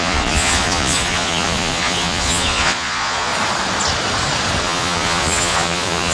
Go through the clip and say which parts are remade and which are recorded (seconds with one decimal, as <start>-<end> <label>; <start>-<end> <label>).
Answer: 0.0-3.3 remade; 3.3-4.6 recorded; 4.6-6.1 remade